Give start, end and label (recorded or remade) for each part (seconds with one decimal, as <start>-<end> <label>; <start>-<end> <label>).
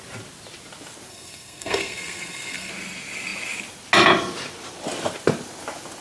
0.0-1.1 recorded; 1.1-2.7 remade; 2.7-6.0 recorded